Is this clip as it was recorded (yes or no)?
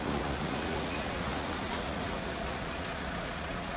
no